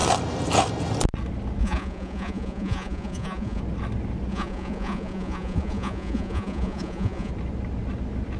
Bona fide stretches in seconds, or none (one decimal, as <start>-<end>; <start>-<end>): 0.0-1.6; 3.6-4.3; 7.3-8.4